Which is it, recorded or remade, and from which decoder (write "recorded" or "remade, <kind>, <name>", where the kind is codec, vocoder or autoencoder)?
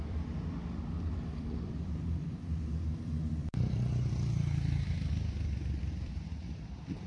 remade, vocoder, BigVGAN v2